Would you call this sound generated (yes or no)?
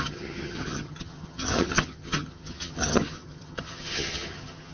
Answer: yes